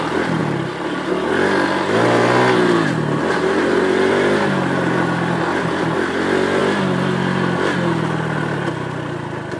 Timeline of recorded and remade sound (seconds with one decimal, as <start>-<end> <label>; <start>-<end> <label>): 0.0-9.6 recorded